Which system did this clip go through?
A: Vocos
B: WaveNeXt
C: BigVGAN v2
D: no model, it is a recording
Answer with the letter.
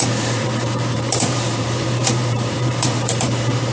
C